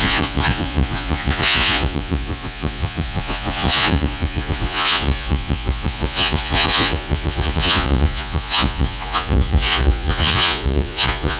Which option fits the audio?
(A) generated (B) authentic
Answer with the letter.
A